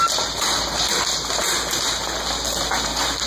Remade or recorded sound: recorded